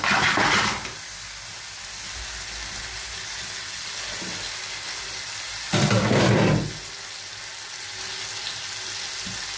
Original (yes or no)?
yes